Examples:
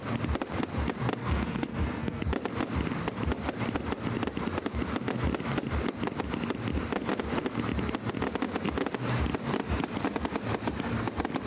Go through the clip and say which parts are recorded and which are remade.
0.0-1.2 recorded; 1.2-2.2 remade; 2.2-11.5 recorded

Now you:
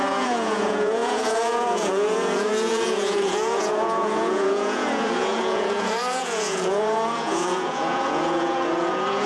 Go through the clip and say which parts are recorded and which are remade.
0.0-9.3 remade

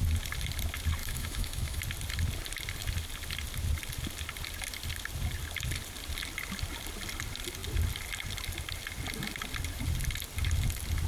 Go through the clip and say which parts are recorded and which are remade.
0.0-1.0 recorded; 1.0-1.8 remade; 1.8-11.1 recorded

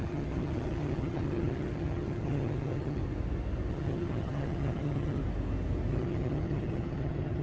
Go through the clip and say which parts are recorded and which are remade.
0.0-3.0 remade; 3.0-3.7 recorded; 3.7-5.2 remade; 5.2-5.9 recorded; 5.9-7.4 remade

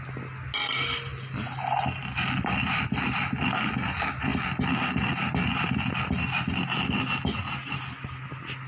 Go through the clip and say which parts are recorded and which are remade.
0.0-8.7 recorded

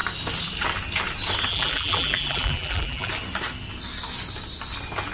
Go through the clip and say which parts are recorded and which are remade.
0.0-1.5 recorded; 1.5-3.1 remade; 3.1-5.1 recorded